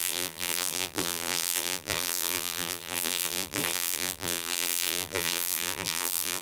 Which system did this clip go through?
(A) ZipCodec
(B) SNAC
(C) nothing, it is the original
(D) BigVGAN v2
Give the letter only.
D